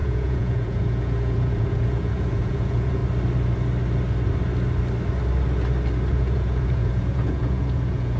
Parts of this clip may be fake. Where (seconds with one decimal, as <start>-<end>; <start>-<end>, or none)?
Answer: 0.0-3.0; 6.1-8.2